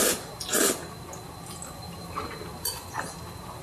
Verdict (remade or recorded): recorded